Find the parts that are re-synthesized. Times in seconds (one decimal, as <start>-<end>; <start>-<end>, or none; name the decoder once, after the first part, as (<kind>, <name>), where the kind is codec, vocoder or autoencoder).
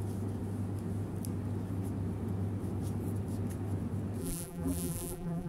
4.2-5.5 (vocoder, BigVGAN v2)